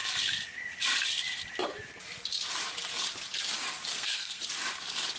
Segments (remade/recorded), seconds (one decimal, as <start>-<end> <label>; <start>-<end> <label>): 0.0-3.9 recorded; 3.9-4.4 remade; 4.4-5.2 recorded